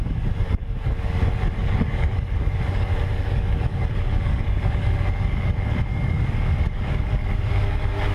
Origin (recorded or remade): remade